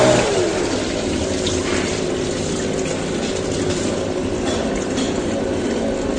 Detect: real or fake real